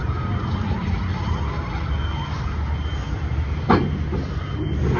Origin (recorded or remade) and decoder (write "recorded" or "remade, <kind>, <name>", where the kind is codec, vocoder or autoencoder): recorded